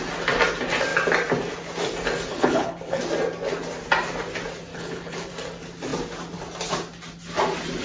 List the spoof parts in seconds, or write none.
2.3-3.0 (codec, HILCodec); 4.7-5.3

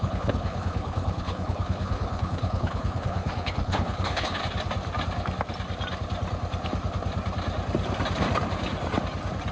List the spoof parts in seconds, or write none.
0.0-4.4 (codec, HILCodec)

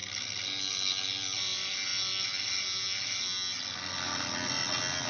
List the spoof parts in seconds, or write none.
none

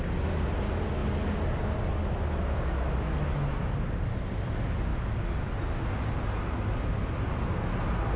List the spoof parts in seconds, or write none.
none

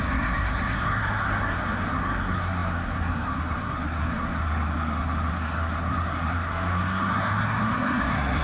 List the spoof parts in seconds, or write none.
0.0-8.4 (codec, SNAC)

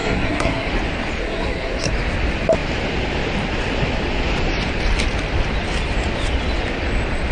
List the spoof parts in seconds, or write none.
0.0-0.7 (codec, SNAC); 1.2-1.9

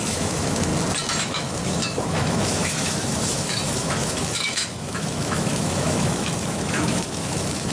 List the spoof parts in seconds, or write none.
0.0-0.7 (autoencoder, DAC-VAE); 1.2-7.7